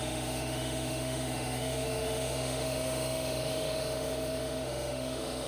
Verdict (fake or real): fake